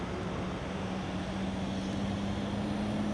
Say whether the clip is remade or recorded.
recorded